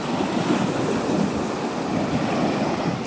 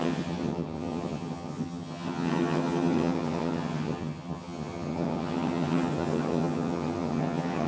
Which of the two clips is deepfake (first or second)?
second